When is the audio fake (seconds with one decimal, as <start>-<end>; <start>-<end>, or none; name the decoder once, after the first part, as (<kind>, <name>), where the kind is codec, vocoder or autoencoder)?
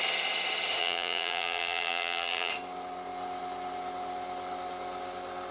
0.8-2.5 (vocoder, BigVGAN v2)